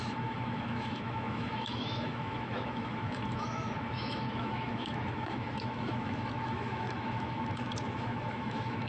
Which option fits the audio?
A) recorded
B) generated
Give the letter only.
B